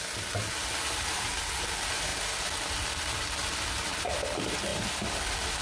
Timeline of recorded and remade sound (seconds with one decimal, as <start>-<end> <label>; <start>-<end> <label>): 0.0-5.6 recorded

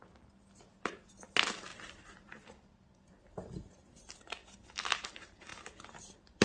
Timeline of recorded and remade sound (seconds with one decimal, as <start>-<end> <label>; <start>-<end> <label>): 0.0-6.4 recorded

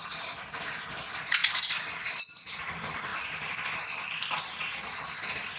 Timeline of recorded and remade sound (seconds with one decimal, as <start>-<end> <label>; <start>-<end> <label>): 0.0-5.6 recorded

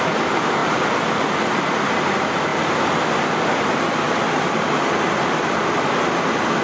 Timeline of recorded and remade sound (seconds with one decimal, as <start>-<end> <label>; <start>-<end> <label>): 0.0-6.6 recorded